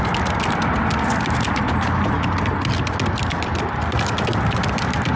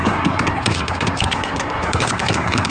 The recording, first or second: first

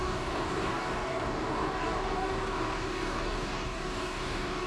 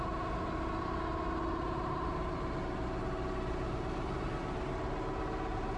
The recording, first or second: second